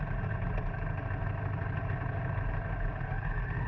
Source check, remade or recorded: recorded